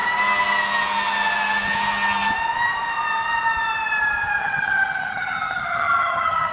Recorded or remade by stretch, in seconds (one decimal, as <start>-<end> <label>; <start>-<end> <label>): 0.0-4.4 recorded; 4.4-6.5 remade